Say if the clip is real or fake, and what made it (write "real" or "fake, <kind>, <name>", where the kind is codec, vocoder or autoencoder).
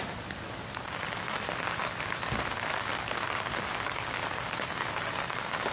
real